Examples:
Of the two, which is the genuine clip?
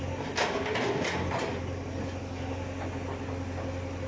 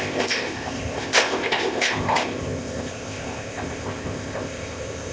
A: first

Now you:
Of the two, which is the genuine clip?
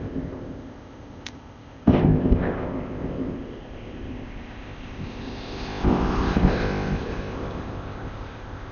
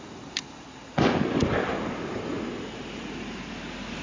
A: second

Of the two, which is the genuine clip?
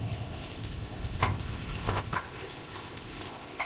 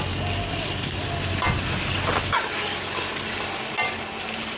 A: second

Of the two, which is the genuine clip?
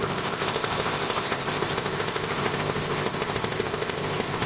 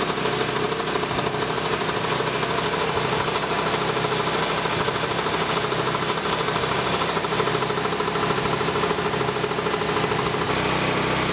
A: second